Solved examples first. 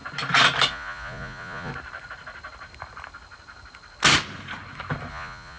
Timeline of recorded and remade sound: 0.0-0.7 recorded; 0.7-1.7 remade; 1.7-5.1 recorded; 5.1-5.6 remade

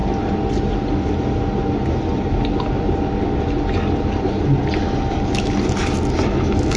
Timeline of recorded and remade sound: 0.0-6.8 recorded

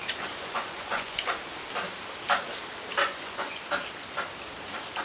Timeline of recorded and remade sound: 0.0-1.3 remade; 1.3-3.0 recorded; 3.0-3.6 remade; 3.6-5.0 recorded

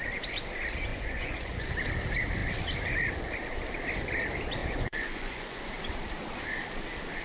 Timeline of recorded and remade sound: 0.0-0.9 recorded; 0.9-1.7 remade; 1.7-4.6 recorded; 4.6-5.6 remade; 5.6-7.2 recorded